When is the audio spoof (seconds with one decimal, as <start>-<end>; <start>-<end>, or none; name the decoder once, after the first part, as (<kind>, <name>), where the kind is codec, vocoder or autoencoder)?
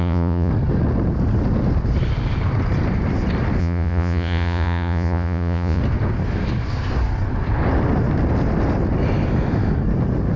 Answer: 0.0-0.5 (vocoder, Vocos); 3.6-5.8